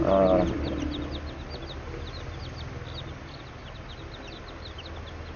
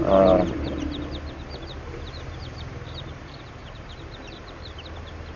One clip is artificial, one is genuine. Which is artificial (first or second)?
second